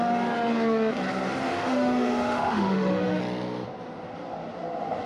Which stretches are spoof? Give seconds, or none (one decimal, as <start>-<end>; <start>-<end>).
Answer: 1.5-3.2

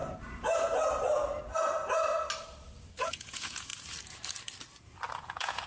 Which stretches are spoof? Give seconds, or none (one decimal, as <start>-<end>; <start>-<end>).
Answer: 3.0-3.7; 5.2-5.7

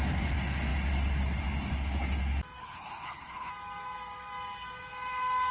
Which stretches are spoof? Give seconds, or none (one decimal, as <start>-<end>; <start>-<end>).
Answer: 2.6-3.5

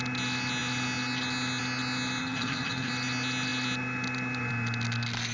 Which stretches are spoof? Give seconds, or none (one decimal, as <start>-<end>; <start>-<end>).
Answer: 2.2-2.9

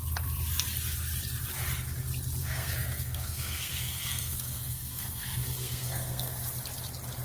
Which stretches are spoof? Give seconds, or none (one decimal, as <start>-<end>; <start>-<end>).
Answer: 2.4-6.4

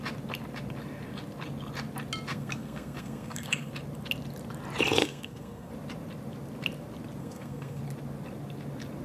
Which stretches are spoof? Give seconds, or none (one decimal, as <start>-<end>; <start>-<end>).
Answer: 2.3-3.7; 5.0-5.7; 7.2-7.8

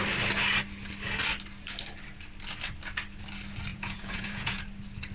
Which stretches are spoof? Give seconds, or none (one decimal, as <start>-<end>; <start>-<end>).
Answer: 3.7-4.6